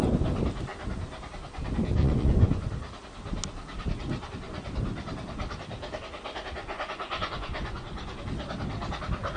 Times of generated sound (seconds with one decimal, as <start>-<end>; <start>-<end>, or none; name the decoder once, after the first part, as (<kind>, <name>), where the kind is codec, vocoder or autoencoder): 2.0-2.7 (vocoder, Vocos); 6.6-8.2